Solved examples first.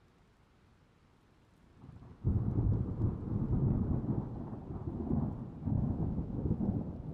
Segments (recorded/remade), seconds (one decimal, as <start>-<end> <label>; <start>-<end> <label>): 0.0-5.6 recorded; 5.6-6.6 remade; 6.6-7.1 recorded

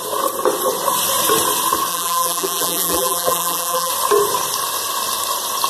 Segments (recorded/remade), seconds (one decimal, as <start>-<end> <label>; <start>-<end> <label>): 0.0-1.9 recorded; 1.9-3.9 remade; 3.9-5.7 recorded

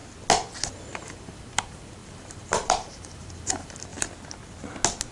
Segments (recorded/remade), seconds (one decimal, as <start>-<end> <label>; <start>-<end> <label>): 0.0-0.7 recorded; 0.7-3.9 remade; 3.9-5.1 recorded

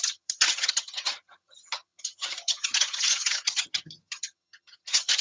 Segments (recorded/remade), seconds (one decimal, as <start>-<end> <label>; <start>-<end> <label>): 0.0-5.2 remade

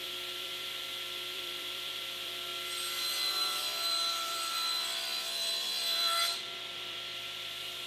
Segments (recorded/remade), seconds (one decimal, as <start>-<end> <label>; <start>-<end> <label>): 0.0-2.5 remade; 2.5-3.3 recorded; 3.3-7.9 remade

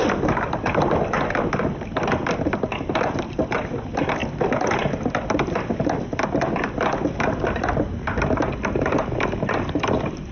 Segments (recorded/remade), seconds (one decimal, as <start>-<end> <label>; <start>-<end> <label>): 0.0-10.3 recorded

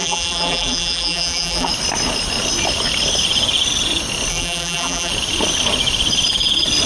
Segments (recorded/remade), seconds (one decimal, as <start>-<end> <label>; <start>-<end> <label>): 0.0-1.7 remade; 1.7-4.3 recorded; 4.3-5.1 remade; 5.1-6.9 recorded

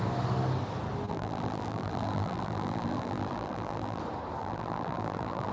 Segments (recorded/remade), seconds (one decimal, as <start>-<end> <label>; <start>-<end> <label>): 0.0-1.1 recorded; 1.1-4.0 remade; 4.0-4.4 recorded; 4.4-5.5 remade